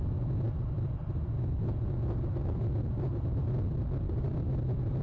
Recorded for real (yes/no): yes